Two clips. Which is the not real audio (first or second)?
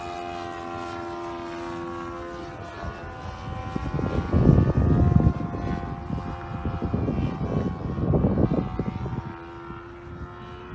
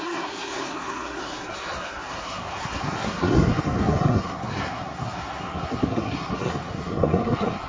second